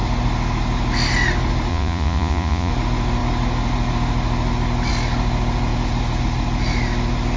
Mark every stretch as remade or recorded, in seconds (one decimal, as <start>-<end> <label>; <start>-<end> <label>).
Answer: 0.0-1.7 recorded; 1.7-2.7 remade; 2.7-7.4 recorded